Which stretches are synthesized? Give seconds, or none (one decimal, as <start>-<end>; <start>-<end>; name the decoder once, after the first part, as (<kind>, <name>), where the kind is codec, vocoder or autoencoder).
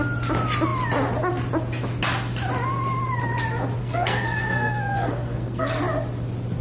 3.8-5.8 (codec, SNAC)